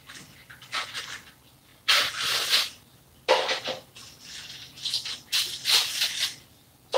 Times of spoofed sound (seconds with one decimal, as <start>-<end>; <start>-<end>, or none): none

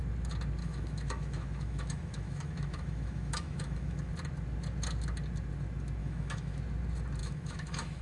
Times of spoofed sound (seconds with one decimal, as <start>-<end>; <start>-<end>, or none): 0.6-4.1; 6.0-6.6; 7.2-8.0

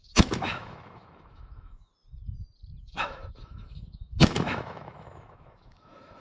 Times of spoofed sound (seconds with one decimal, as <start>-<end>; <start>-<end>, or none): 0.0-1.9; 2.8-6.2

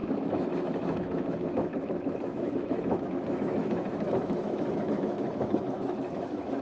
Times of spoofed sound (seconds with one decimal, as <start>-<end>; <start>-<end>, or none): 0.0-6.6

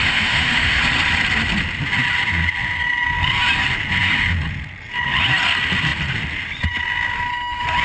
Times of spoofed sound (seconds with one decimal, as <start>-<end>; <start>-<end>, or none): 0.0-0.8

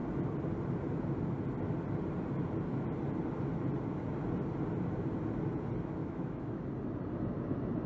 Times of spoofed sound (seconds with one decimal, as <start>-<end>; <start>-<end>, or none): 6.0-6.6

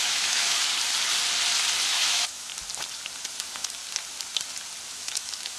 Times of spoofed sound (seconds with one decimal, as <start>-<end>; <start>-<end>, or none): 0.0-0.7; 1.9-2.5; 3.3-3.8; 4.9-5.6

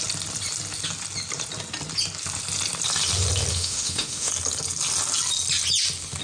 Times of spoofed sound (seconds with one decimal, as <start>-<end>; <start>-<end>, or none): 3.5-4.3